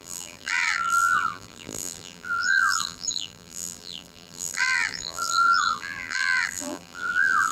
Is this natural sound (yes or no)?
no